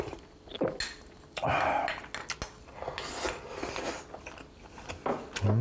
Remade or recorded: recorded